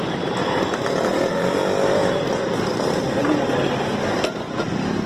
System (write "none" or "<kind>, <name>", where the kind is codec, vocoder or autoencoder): none